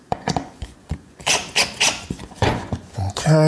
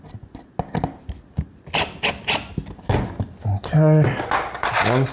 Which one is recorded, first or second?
second